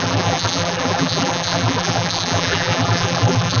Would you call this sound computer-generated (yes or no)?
yes